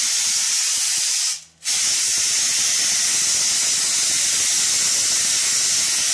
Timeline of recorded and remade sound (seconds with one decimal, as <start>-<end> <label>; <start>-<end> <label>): 0.0-6.1 recorded